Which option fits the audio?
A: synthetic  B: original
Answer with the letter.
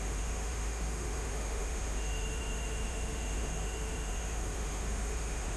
A